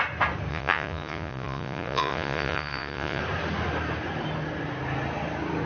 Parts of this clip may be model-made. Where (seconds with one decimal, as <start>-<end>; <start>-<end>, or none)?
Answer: 0.5-3.2